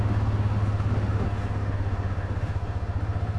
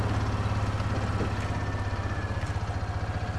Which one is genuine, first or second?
second